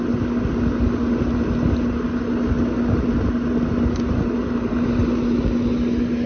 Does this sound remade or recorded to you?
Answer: recorded